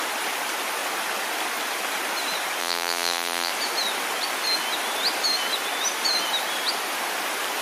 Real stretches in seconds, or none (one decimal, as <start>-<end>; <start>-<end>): 0.0-2.6; 3.5-7.6